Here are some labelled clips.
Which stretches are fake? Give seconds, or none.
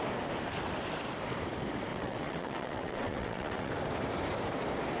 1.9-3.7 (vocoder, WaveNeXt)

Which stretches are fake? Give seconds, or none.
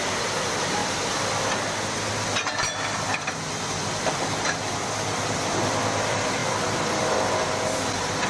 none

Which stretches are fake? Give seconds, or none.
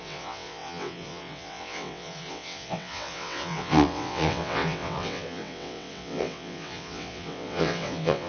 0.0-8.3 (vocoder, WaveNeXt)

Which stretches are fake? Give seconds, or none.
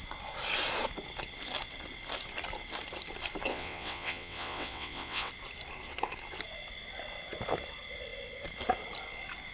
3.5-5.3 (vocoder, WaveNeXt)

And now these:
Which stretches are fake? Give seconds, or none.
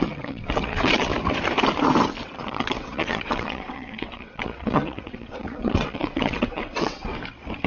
0.0-1.1 (vocoder, WaveNeXt); 2.2-7.1